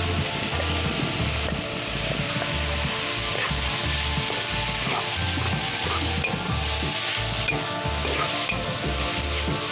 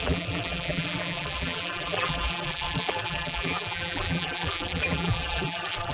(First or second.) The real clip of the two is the first